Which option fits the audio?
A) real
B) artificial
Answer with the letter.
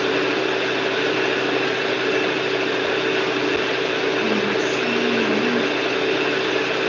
A